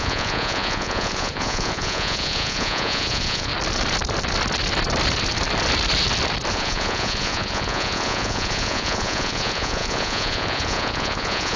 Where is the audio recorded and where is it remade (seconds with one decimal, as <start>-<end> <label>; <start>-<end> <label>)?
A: 0.0-3.5 remade; 3.5-6.5 recorded; 6.5-11.6 remade